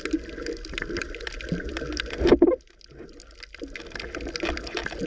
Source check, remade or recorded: recorded